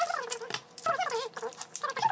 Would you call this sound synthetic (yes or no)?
no